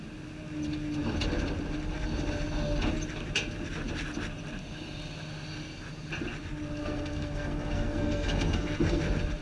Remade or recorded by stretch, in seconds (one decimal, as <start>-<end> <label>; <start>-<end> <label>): 0.0-6.8 recorded; 6.8-9.0 remade; 9.0-9.4 recorded